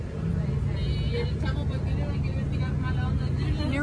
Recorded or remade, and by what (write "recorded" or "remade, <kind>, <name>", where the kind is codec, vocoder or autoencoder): recorded